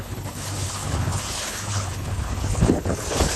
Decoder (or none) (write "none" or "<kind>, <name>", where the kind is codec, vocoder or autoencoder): codec, HILCodec